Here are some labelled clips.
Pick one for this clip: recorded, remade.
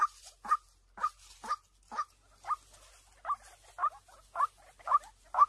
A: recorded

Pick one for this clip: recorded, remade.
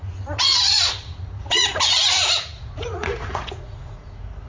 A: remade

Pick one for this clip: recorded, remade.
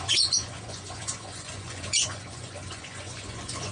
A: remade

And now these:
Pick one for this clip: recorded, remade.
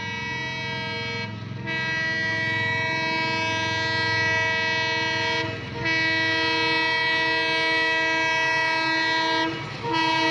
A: recorded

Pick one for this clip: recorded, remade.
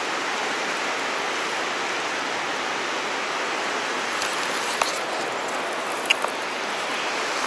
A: recorded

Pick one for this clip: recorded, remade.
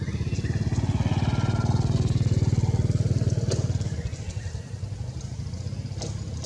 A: recorded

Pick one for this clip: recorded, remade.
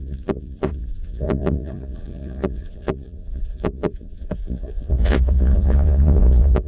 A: remade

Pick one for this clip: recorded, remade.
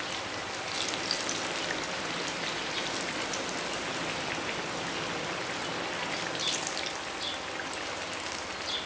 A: recorded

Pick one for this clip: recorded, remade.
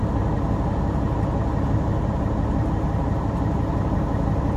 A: recorded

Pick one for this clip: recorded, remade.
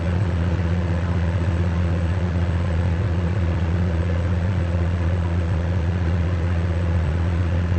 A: remade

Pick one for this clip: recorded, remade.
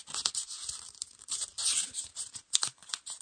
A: recorded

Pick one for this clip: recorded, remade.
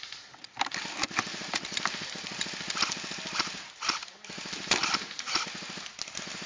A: recorded